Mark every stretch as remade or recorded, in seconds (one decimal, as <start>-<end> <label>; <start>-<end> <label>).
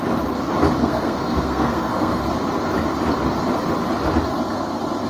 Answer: 0.0-0.8 recorded; 0.8-2.2 remade; 2.2-5.1 recorded